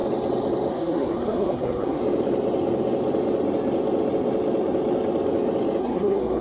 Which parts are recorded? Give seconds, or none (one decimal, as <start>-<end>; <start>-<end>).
0.0-0.7; 2.0-5.8